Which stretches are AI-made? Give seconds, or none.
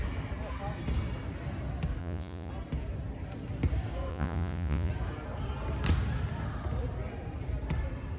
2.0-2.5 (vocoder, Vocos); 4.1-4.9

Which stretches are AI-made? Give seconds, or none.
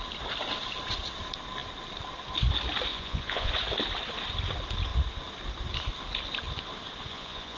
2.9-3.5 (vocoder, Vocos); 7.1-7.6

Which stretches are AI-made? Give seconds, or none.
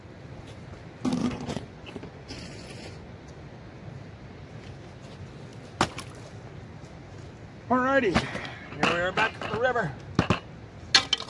1.2-3.4 (vocoder, Vocos)